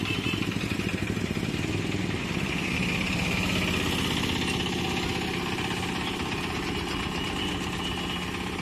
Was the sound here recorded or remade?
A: recorded